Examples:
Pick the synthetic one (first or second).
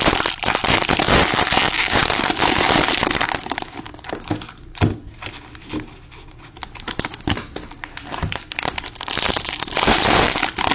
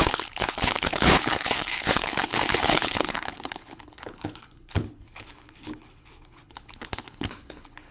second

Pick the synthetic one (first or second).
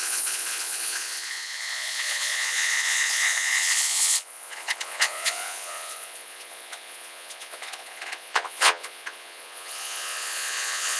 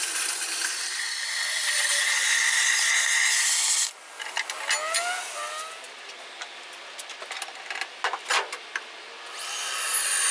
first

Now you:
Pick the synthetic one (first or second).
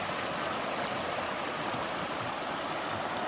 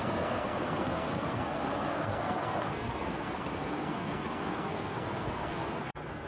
second